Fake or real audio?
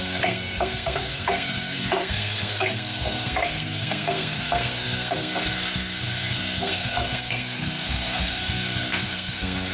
fake